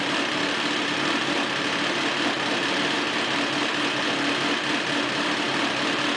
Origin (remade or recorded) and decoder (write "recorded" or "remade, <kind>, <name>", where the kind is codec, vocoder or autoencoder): recorded